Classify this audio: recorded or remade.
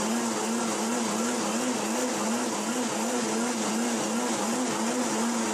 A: recorded